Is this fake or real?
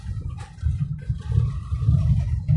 fake